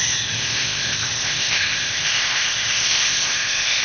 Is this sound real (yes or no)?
no